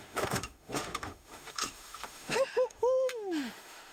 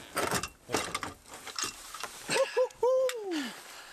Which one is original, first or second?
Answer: second